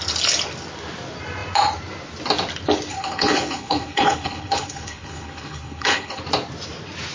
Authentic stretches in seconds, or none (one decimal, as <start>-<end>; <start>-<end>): 0.0-2.9; 6.2-7.1